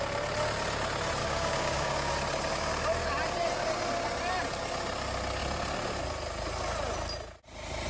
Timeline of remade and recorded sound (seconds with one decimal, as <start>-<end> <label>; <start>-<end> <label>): 0.0-1.2 recorded; 1.2-2.1 remade; 2.1-7.9 recorded